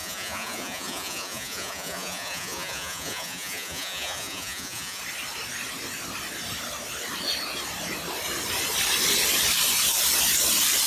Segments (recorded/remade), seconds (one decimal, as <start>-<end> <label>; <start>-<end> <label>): 0.0-5.0 remade; 5.0-10.9 recorded